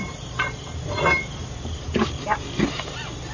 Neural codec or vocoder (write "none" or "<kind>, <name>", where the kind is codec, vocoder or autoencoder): vocoder, BigVGAN v2